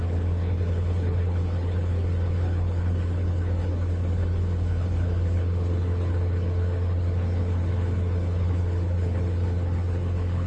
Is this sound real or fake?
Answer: fake